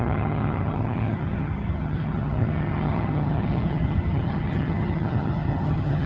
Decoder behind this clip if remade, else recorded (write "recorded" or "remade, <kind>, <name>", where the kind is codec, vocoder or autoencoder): remade, vocoder, HiFi-GAN